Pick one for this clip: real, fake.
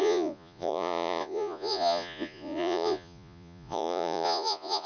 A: fake